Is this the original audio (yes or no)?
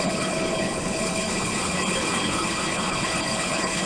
no